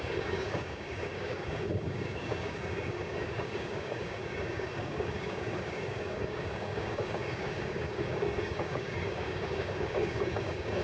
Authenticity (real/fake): fake